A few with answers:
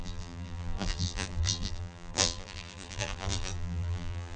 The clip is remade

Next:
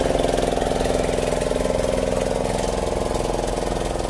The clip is recorded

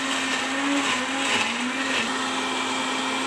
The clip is recorded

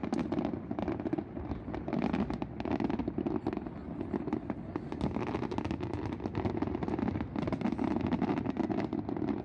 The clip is recorded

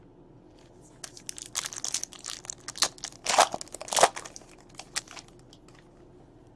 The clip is recorded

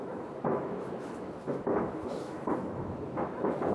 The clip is remade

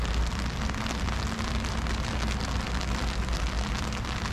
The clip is recorded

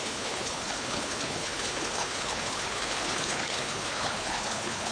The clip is remade